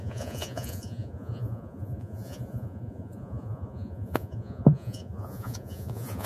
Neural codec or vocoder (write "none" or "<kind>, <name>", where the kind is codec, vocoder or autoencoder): vocoder, Vocos